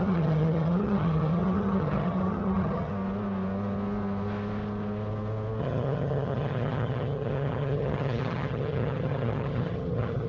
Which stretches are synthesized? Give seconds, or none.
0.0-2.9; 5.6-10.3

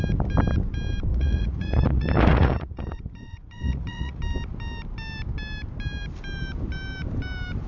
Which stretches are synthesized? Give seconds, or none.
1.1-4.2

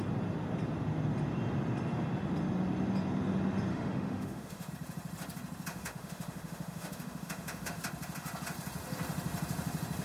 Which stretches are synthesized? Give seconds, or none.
3.7-4.7; 5.7-7.8

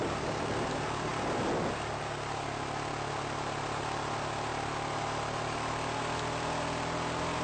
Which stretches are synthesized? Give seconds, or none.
none

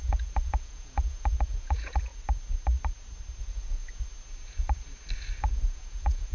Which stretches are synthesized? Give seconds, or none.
0.0-2.1; 3.4-3.8; 5.4-6.3